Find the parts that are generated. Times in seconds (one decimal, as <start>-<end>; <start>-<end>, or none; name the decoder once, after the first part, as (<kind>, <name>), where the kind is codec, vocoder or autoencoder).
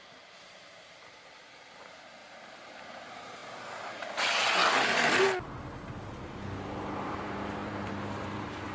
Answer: 0.0-3.4 (vocoder, BigVGAN v2); 7.0-8.7